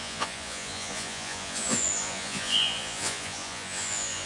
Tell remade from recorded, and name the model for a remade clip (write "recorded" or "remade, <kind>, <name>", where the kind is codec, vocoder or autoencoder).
remade, vocoder, Vocos